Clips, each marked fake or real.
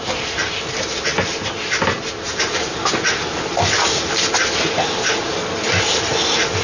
real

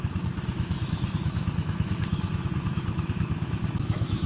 fake